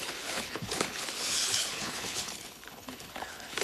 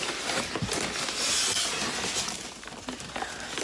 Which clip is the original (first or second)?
second